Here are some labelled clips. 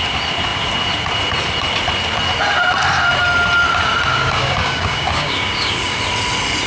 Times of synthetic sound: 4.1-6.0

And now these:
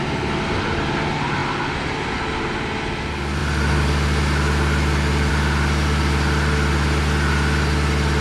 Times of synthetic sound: none